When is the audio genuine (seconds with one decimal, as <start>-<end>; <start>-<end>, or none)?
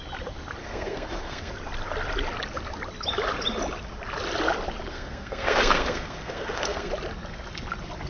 0.0-0.6; 1.5-4.9; 6.9-8.1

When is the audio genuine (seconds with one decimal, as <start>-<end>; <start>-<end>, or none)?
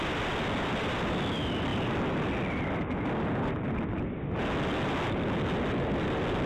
0.0-6.5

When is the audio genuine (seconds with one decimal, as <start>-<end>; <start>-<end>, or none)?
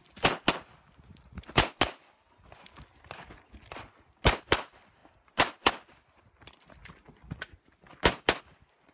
0.0-8.9